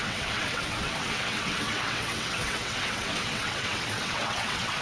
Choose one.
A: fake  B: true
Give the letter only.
A